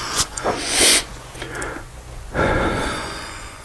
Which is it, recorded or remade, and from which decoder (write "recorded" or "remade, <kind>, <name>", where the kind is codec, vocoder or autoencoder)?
remade, vocoder, Vocos